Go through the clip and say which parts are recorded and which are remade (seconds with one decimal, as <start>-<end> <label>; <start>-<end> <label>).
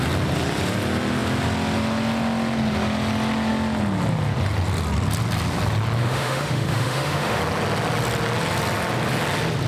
0.0-6.0 recorded; 6.0-7.4 remade; 7.4-9.7 recorded